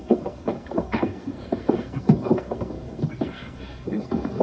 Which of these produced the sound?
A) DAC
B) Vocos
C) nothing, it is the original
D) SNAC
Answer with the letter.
D